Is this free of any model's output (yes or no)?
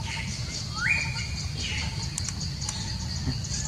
yes